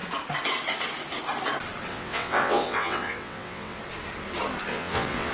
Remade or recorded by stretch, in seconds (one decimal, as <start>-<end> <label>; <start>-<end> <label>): 0.0-1.9 recorded; 1.9-3.8 remade; 3.8-4.7 recorded; 4.7-5.3 remade